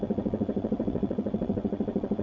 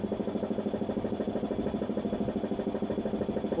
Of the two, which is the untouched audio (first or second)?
second